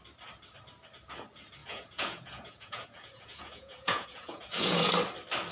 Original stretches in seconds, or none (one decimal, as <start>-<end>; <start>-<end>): 0.0-1.6; 4.9-5.5